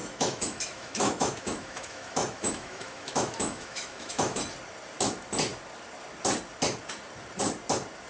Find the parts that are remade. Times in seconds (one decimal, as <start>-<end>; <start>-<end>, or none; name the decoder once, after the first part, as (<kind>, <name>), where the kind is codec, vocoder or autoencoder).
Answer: 0.0-4.4 (autoencoder, DAC-VAE)